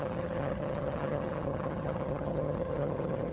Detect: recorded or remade remade